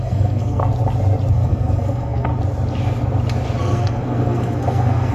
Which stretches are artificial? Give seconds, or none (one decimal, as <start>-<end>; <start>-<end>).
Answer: 0.0-0.6; 1.3-2.3; 3.6-5.1